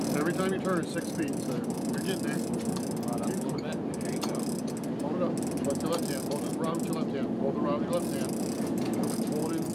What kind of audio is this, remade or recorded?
recorded